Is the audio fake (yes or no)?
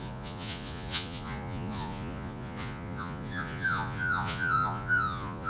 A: yes